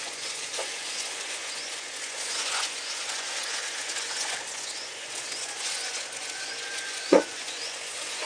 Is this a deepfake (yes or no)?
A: yes